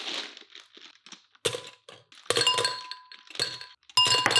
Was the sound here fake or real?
real